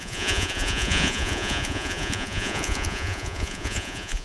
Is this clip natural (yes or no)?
no